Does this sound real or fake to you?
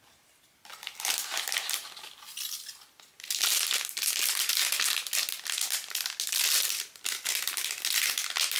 real